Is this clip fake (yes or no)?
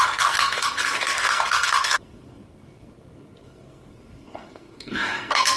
yes